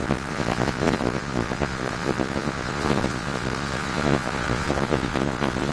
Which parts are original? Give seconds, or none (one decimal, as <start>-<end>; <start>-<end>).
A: none